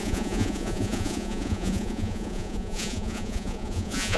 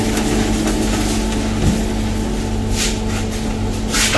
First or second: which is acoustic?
second